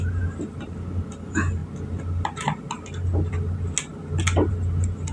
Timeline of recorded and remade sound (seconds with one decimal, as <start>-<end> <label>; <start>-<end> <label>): 0.0-5.1 recorded